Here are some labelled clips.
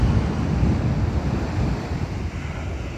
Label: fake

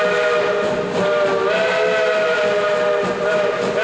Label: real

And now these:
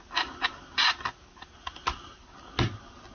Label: real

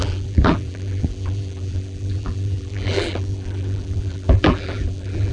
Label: fake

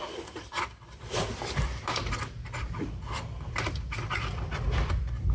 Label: real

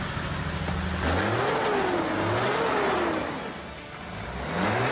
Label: real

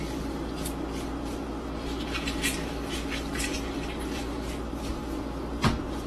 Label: real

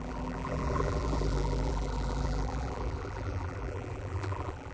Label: fake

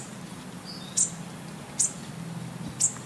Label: real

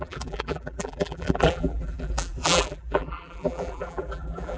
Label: fake